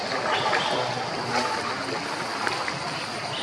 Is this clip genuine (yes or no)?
yes